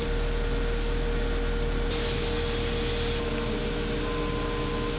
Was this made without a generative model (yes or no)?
yes